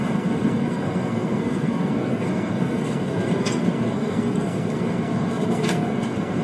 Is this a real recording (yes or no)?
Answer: no